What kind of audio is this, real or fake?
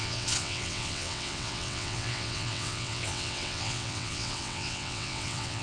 fake